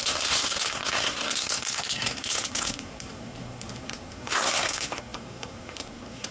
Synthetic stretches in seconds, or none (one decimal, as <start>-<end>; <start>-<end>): 0.0-6.3